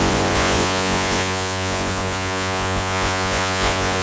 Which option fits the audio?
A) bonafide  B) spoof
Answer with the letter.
B